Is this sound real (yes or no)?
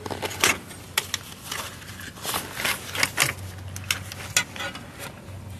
yes